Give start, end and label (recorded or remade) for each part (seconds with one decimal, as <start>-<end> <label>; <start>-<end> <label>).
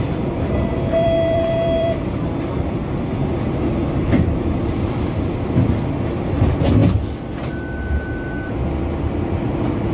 0.0-2.8 remade; 2.8-4.1 recorded; 4.1-6.8 remade; 6.8-8.5 recorded; 8.5-9.9 remade